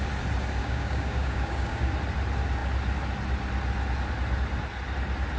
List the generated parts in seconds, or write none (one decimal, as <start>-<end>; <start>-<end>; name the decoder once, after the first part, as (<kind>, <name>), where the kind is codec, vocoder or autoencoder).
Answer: 0.6-1.9 (codec, DAC)

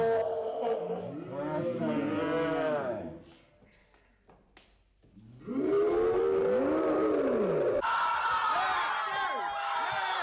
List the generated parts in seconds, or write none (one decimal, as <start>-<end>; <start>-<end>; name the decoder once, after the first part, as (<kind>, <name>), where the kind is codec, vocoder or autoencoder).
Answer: none

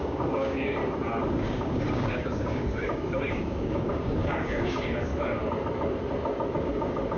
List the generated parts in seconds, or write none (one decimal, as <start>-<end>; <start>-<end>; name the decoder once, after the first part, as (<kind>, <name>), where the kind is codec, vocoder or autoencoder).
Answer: 0.0-0.8 (codec, DAC); 1.3-5.1; 6.6-7.2